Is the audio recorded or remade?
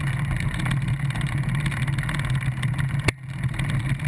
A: recorded